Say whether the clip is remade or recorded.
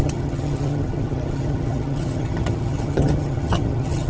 remade